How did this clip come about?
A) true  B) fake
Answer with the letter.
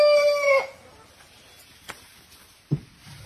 A